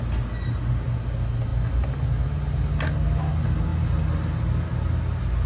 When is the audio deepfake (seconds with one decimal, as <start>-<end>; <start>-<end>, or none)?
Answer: none